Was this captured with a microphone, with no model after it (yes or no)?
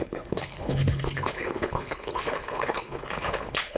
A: no